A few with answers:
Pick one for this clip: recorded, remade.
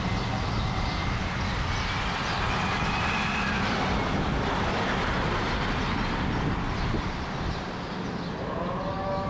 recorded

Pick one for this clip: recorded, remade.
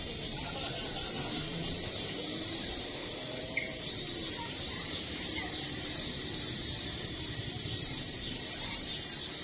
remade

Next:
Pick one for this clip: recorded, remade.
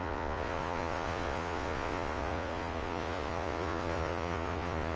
remade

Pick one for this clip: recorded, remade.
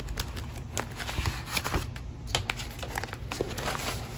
recorded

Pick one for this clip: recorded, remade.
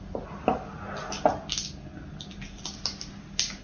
recorded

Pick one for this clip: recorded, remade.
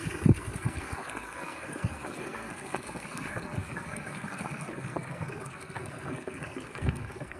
remade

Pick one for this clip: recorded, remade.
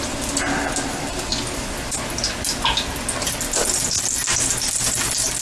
recorded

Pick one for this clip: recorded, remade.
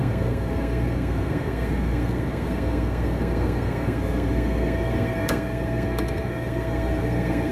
remade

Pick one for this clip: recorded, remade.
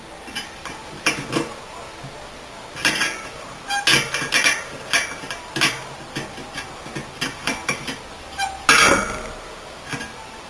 recorded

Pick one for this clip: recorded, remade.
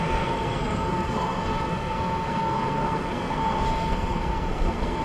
remade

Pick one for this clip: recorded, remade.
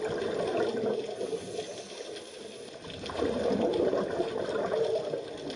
recorded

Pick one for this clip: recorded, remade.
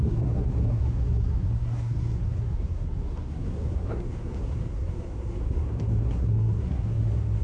remade